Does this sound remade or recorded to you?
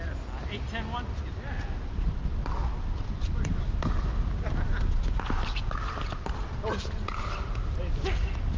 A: recorded